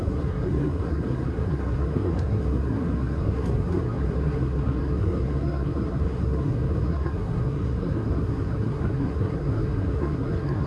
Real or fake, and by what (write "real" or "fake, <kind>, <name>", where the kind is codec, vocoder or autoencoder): fake, codec, SNAC